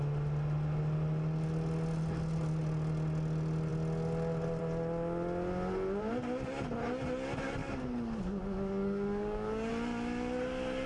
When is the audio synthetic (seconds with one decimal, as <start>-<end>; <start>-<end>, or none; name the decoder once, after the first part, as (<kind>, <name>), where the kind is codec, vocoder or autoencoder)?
7.6-9.7 (codec, DAC)